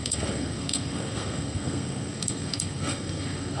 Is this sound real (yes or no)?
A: no